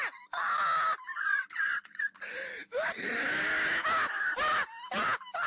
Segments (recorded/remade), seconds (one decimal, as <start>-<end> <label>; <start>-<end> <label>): 0.0-1.1 recorded; 1.1-2.2 remade; 2.2-5.5 recorded